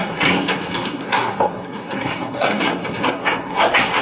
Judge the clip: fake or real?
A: fake